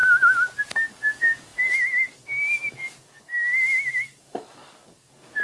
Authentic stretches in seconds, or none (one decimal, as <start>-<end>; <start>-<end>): 0.0-0.9